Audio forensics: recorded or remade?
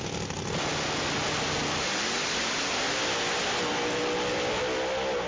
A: recorded